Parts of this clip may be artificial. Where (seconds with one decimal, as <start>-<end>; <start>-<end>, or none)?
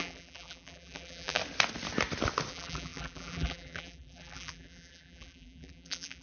0.0-1.4; 2.5-6.2